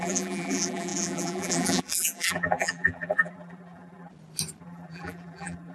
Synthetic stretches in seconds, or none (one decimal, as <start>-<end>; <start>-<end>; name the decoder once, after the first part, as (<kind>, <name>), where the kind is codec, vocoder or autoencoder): 0.0-4.1 (vocoder, BigVGAN v2); 4.6-5.7